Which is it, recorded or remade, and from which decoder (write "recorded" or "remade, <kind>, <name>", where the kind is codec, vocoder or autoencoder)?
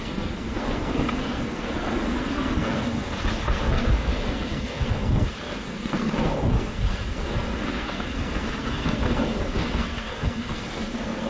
remade, codec, SNAC